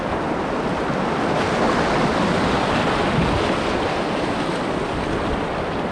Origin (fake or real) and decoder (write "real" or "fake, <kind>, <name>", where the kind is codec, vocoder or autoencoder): real